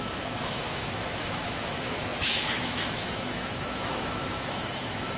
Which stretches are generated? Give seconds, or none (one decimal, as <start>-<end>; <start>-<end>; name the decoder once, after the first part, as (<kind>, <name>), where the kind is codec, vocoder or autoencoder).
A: 0.0-5.2 (autoencoder, DAC-VAE)